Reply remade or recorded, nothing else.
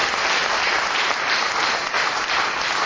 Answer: recorded